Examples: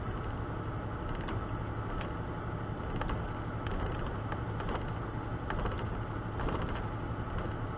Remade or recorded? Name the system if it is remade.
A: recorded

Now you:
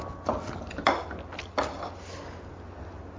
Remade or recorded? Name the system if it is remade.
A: recorded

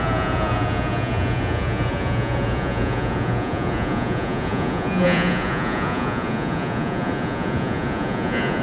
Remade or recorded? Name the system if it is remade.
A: remade, vocoder, Vocos